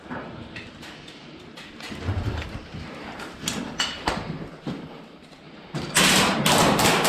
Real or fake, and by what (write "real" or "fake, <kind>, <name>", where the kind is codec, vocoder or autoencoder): fake, vocoder, BigVGAN v2